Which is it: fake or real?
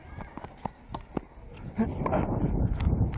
real